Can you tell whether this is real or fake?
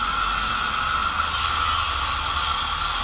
real